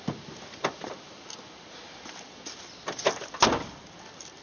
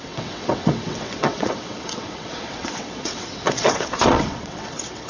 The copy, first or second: second